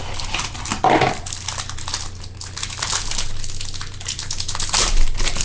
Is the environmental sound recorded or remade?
recorded